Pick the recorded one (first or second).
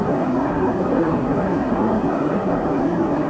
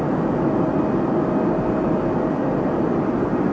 second